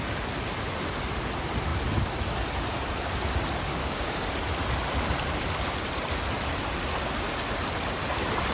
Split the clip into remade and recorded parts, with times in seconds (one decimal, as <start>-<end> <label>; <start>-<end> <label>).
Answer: 0.0-3.8 recorded; 3.8-4.3 remade; 4.3-8.5 recorded